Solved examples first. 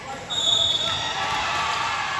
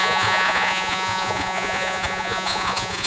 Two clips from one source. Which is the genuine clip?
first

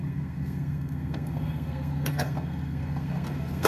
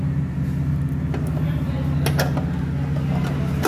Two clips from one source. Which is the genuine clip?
second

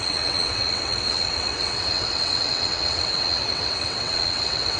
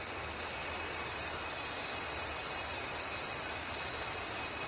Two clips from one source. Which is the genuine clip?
second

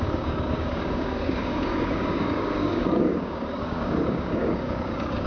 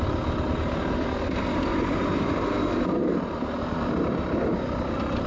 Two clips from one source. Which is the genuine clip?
second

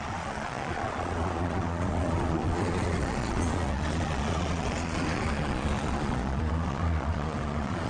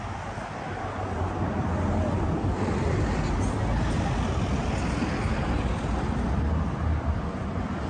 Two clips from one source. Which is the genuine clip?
second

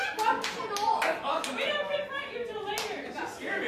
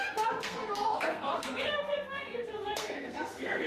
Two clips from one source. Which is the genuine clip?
first